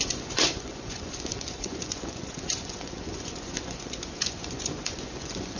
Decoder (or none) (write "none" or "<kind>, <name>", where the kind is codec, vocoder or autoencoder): vocoder, Vocos